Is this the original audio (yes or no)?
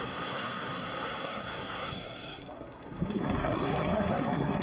no